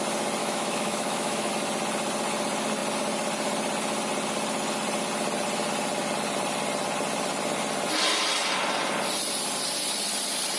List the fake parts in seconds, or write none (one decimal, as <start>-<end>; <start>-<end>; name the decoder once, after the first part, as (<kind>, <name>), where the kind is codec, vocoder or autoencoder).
0.4-1.5 (autoencoder, DAC-VAE)